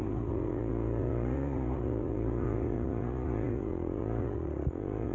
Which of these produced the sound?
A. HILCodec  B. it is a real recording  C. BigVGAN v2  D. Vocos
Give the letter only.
D